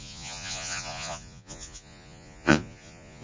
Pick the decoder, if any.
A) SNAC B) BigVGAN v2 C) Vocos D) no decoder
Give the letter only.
C